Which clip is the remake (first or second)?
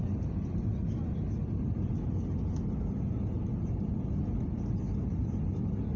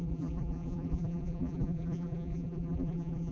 second